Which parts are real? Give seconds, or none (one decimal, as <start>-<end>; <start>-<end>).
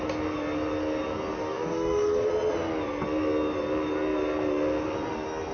0.0-1.4; 2.3-5.5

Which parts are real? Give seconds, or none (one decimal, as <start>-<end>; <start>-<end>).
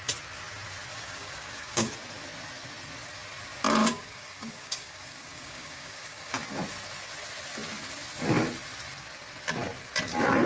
0.0-0.9; 1.9-3.8; 6.3-10.5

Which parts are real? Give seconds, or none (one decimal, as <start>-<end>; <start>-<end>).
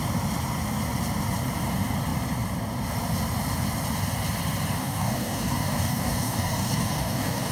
0.0-4.8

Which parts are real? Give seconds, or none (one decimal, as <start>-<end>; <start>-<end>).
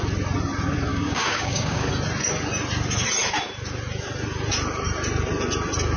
0.0-0.9; 1.9-6.0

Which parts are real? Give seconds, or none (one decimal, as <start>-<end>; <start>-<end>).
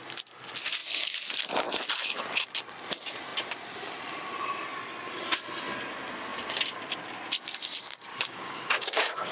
0.0-8.1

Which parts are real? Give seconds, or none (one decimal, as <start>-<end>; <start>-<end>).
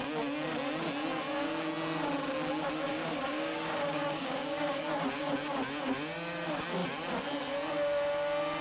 0.0-2.9; 4.8-8.6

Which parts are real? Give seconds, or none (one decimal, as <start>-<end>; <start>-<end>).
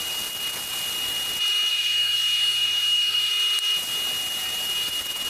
0.0-1.7; 3.3-5.3